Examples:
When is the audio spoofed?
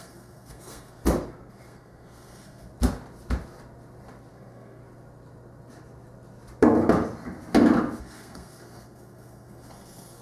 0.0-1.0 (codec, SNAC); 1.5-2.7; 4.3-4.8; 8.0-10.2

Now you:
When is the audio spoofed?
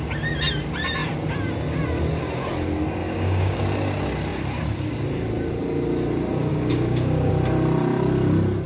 3.0-3.6 (codec, DAC); 6.5-7.3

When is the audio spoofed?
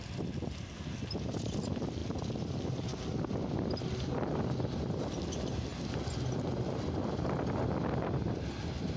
none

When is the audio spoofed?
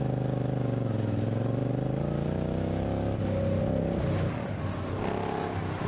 none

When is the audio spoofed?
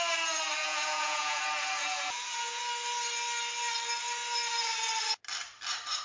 0.6-1.4 (vocoder, Vocos); 1.8-2.6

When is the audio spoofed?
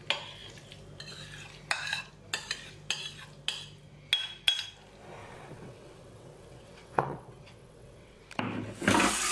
5.2-8.2 (vocoder, WaveNeXt)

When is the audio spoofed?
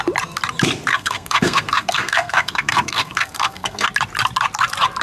0.9-3.9 (codec, SNAC)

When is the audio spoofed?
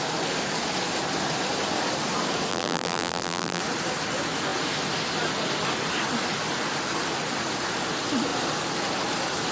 2.5-3.6 (vocoder, BigVGAN v2)